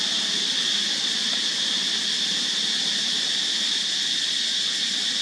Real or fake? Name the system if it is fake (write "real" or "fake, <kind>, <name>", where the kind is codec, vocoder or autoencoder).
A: real